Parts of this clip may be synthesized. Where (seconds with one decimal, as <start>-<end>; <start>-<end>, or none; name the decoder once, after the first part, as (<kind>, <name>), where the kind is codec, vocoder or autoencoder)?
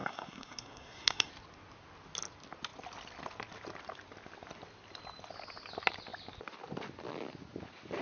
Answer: 0.0-1.3 (codec, SNAC)